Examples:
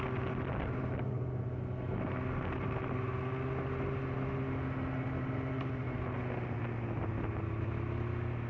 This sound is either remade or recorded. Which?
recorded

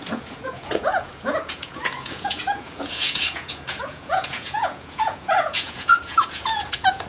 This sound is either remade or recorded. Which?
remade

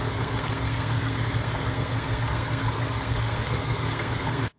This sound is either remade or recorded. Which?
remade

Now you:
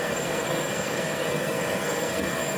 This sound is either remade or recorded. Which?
remade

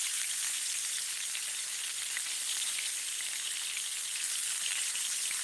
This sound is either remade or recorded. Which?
remade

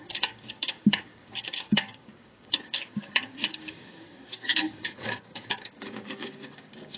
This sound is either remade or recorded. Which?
remade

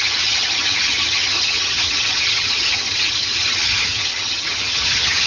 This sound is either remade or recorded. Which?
remade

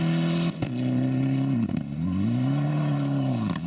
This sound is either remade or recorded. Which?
recorded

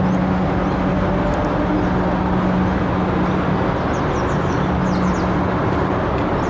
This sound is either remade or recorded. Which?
recorded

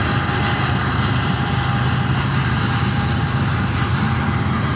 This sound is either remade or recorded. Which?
remade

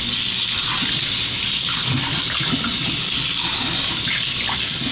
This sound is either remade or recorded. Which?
recorded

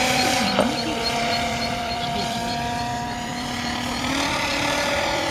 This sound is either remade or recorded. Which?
remade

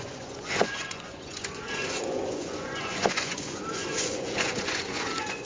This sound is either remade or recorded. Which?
remade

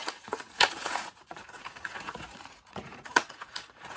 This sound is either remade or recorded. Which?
remade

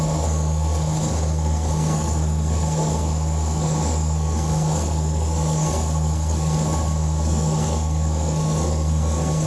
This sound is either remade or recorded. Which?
remade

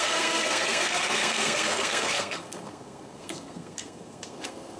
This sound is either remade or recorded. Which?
remade